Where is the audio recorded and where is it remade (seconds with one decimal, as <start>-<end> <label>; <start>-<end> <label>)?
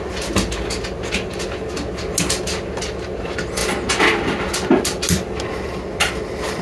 0.0-6.6 recorded